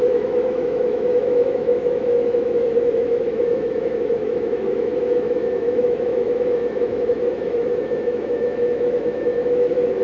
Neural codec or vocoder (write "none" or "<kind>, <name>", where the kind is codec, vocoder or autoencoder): autoencoder, DAC-VAE